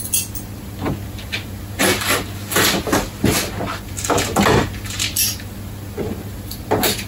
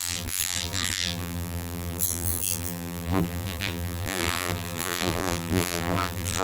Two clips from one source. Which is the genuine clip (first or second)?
first